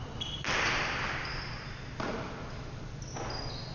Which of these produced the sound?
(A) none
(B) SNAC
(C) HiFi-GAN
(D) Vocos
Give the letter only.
A